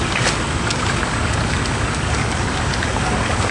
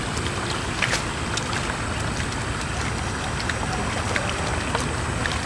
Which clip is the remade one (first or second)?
first